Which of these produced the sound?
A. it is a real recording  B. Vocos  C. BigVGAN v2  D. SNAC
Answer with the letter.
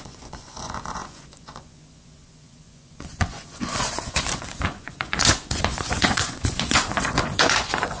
B